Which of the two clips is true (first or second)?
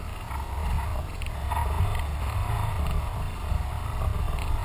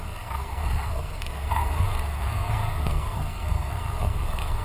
first